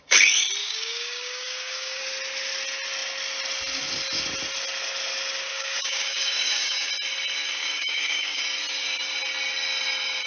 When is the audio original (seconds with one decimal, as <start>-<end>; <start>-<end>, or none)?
0.0-0.6; 2.0-5.5; 6.9-7.6; 8.4-10.3